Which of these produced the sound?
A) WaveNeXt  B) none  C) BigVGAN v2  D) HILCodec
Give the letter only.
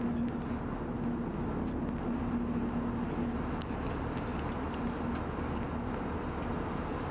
B